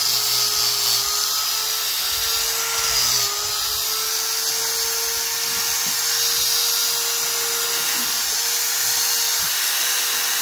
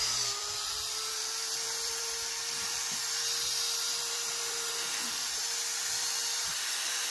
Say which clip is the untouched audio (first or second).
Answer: first